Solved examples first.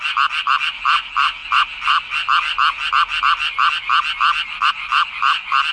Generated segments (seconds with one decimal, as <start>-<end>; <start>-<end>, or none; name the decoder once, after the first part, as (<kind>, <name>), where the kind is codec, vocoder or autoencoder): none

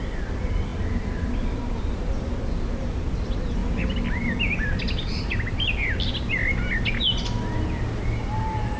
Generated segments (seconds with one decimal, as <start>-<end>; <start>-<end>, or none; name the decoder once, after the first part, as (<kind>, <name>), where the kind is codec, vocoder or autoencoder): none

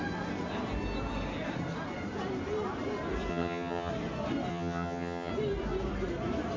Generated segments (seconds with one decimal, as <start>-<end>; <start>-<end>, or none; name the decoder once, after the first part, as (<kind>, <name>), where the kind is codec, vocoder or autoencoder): 3.3-3.9 (vocoder, HiFi-GAN); 4.5-5.3

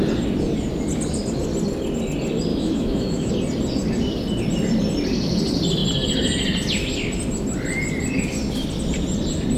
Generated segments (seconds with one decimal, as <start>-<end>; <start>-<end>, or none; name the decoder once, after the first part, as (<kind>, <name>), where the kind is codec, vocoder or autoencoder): 2.5-3.3 (autoencoder, DAC-VAE)